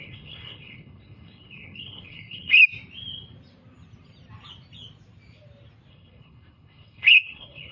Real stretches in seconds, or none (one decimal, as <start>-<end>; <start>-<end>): 2.6-5.9